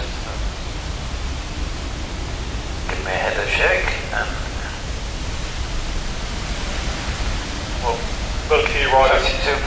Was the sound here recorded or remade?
recorded